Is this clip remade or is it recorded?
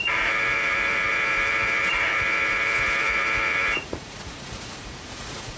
remade